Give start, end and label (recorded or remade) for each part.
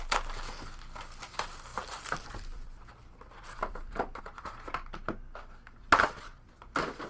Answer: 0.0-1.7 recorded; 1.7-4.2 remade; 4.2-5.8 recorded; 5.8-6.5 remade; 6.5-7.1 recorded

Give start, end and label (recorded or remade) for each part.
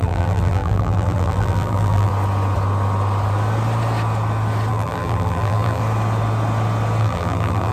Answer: 0.0-2.1 remade; 2.1-4.7 recorded; 4.7-5.8 remade; 5.8-7.0 recorded; 7.0-7.7 remade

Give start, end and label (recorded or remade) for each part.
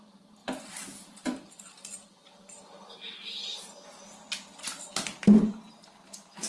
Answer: 0.0-0.4 recorded; 0.4-1.5 remade; 1.5-6.5 recorded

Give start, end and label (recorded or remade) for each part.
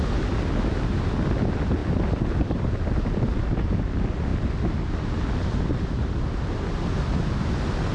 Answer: 0.0-1.8 recorded; 1.8-3.9 remade; 3.9-7.9 recorded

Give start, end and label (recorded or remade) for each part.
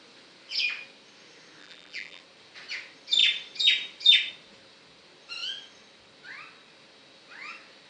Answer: 0.0-1.6 recorded; 1.6-2.2 remade; 2.2-7.9 recorded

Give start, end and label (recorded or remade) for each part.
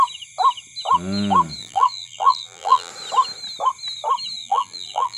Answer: 0.0-1.6 recorded; 1.6-2.9 remade; 2.9-4.4 recorded; 4.4-5.2 remade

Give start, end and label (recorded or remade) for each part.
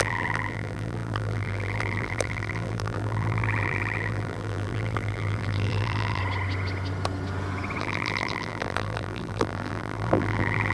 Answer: 0.0-6.2 remade; 6.2-7.8 recorded; 7.8-10.7 remade